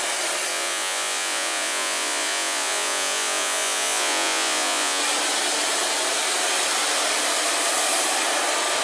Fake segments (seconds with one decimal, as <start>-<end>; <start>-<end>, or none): 0.5-5.0